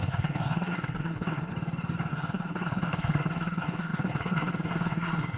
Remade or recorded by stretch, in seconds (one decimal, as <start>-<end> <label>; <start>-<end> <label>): 0.0-1.5 remade; 1.5-2.1 recorded; 2.1-5.4 remade